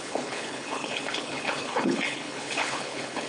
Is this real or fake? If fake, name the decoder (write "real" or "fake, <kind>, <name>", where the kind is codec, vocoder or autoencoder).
fake, codec, HILCodec